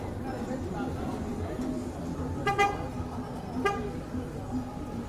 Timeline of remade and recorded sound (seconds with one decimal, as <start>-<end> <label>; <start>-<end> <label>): 0.0-5.1 recorded